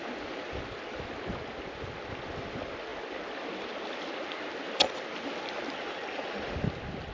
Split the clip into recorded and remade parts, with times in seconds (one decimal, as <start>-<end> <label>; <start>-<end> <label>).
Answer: 0.0-7.1 recorded